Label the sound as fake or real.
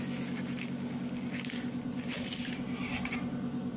real